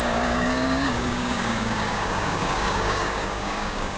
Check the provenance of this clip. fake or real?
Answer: fake